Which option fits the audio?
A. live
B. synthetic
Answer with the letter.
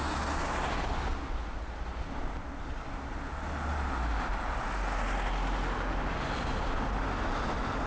A